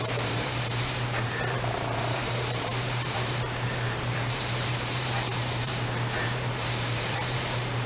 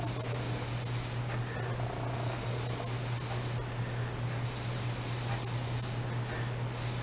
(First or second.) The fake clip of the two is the first